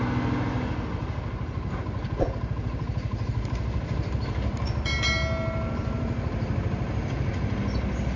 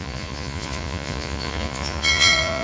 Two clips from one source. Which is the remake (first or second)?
second